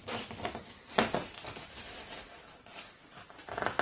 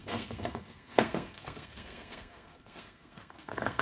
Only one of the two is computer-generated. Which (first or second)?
second